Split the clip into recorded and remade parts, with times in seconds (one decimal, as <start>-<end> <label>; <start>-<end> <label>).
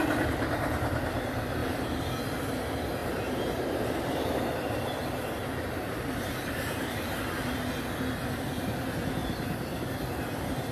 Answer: 0.0-1.6 recorded; 1.6-2.1 remade; 2.1-3.0 recorded; 3.0-7.2 remade; 7.2-10.7 recorded